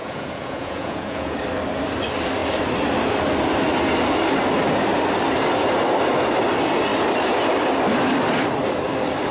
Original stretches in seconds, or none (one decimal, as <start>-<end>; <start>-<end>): 1.4-9.3